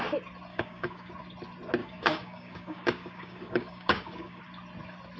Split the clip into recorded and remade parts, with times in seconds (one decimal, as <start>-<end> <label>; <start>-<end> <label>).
0.0-0.5 recorded; 0.5-1.1 remade; 1.1-1.8 recorded; 1.8-4.4 remade; 4.4-5.2 recorded